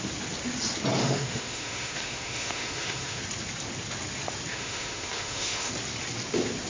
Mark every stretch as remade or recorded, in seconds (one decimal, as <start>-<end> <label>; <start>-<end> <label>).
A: 0.0-1.0 recorded; 1.0-3.2 remade; 3.2-4.5 recorded; 4.5-5.7 remade; 5.7-6.7 recorded